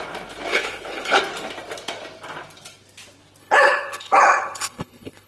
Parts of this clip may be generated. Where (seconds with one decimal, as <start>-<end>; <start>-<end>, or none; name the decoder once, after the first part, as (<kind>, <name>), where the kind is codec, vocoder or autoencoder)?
0.5-1.2 (codec, HILCodec); 3.4-5.3